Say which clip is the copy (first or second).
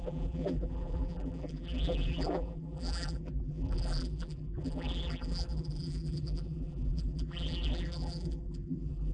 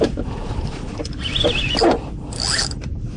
first